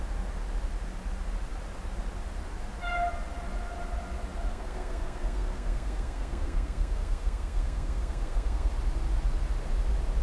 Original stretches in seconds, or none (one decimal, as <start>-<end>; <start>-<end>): 0.0-4.5; 8.7-10.2